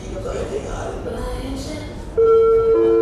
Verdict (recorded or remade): recorded